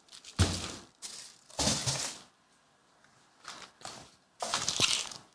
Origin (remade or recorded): recorded